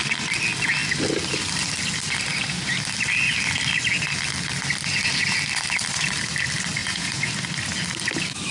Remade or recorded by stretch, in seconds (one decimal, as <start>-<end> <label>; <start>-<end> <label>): 0.0-6.8 recorded; 6.8-7.3 remade; 7.3-8.5 recorded